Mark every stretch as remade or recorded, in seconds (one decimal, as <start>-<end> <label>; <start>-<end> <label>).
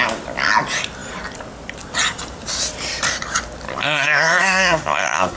0.0-3.8 recorded; 3.8-5.4 remade